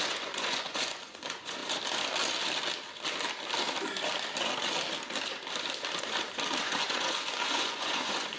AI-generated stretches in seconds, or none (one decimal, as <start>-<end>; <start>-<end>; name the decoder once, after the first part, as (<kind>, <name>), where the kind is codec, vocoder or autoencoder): 0.0-1.6 (vocoder, Vocos); 6.6-8.4